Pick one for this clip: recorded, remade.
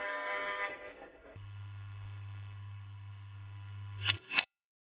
remade